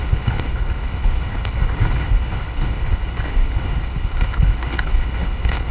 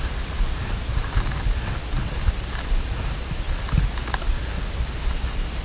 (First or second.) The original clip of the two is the second